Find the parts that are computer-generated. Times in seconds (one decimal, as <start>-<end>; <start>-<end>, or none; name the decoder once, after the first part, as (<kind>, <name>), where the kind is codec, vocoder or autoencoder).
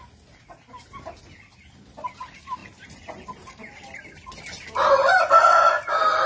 none